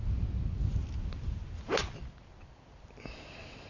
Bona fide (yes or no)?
yes